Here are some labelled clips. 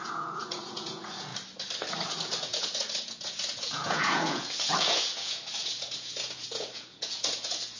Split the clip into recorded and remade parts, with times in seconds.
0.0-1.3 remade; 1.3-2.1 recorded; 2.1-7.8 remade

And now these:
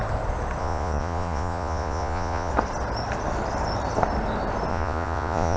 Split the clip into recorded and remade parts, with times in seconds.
0.0-0.6 recorded; 0.6-2.5 remade; 2.5-4.7 recorded; 4.7-5.6 remade

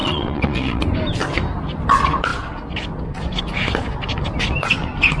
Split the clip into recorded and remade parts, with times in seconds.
0.0-0.8 remade; 0.8-5.2 recorded